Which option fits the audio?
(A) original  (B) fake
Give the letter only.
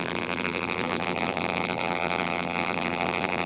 B